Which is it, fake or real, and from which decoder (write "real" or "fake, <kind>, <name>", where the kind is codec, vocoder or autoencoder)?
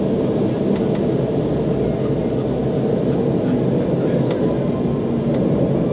real